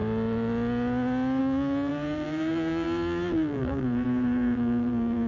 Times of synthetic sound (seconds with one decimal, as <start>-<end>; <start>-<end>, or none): 1.4-5.3